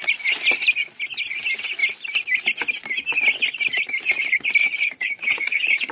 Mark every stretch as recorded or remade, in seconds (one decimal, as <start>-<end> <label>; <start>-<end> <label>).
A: 0.0-4.6 recorded; 4.6-5.9 remade